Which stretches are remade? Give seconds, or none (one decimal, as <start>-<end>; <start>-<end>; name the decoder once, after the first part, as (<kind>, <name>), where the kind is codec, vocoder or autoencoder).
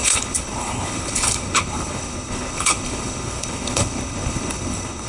0.0-5.1 (codec, HILCodec)